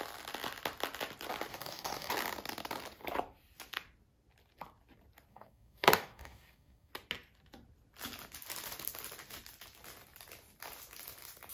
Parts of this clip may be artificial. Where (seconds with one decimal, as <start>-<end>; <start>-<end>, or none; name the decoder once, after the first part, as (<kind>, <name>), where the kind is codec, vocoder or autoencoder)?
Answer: 1.5-2.1 (codec, DAC); 5.3-6.9